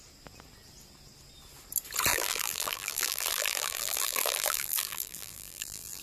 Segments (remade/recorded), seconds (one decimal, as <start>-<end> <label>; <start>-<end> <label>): 0.0-2.1 recorded; 2.1-6.0 remade